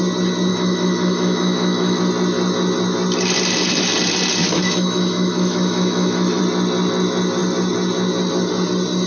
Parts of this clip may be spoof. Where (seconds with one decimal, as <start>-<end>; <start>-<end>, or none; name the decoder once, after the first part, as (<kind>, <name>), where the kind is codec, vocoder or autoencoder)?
0.5-2.0 (autoencoder, DAC-VAE); 4.4-6.4